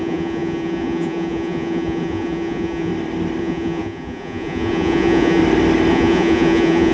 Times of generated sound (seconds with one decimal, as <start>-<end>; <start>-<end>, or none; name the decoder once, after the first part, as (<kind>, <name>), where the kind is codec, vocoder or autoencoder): 0.0-2.9 (vocoder, Vocos); 3.4-5.4; 5.9-6.9